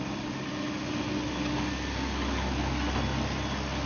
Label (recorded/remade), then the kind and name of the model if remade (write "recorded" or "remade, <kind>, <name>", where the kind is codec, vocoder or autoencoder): recorded